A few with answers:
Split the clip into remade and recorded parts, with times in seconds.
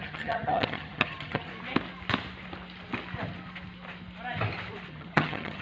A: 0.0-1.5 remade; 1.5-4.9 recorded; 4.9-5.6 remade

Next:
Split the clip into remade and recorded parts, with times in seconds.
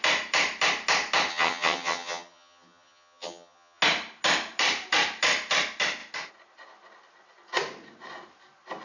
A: 0.0-1.3 recorded; 1.3-3.8 remade; 3.8-8.8 recorded